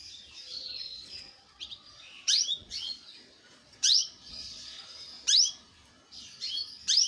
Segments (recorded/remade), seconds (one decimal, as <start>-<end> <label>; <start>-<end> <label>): 0.0-0.5 recorded; 0.5-4.8 remade; 4.8-7.1 recorded